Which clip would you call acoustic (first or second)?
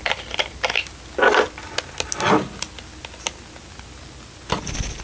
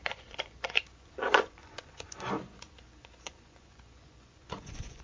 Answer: first